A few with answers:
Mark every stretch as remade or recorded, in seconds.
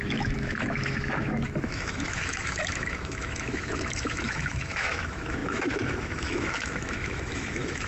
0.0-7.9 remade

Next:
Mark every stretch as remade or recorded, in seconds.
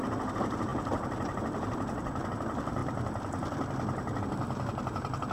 0.0-5.3 recorded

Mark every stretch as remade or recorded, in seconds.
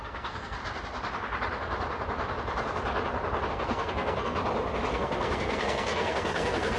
0.0-0.6 remade; 0.6-3.5 recorded; 3.5-4.4 remade; 4.4-4.9 recorded; 4.9-6.8 remade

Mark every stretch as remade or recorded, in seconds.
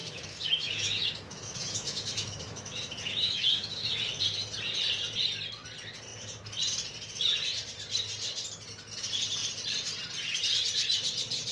0.0-4.2 remade; 4.2-11.5 recorded